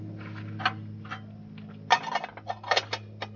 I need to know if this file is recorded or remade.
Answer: recorded